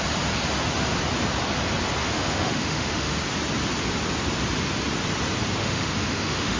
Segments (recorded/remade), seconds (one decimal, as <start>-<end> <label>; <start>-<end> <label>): 0.0-2.0 recorded; 2.0-3.2 remade; 3.2-5.6 recorded; 5.6-6.6 remade